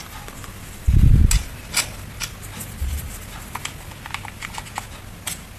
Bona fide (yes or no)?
yes